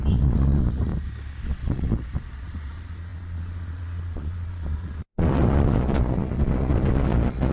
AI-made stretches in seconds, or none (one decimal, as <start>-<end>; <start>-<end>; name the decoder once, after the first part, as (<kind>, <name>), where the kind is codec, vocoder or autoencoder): 0.0-0.9 (vocoder, Vocos); 1.4-7.5